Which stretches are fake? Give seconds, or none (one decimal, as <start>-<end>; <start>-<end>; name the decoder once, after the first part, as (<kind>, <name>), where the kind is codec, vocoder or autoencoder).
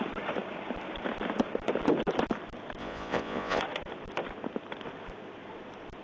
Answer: 2.8-3.6 (vocoder, Vocos)